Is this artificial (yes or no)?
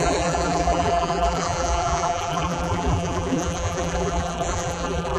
yes